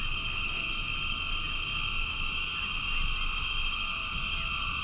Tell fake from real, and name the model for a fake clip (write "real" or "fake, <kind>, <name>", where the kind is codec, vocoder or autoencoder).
real